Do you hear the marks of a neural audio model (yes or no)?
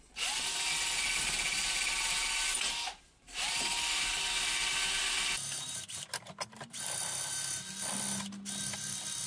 no